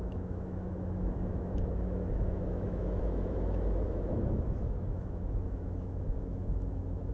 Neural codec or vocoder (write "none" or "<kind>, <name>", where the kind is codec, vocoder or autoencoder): autoencoder, DAC-VAE